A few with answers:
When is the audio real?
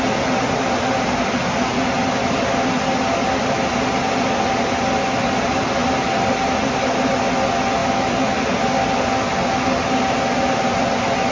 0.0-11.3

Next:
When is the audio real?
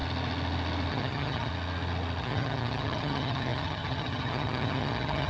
0.0-0.9; 1.5-2.2